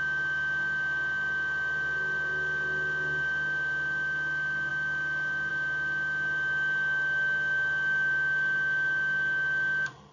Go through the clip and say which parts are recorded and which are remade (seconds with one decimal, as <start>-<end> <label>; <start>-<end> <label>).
0.0-10.1 recorded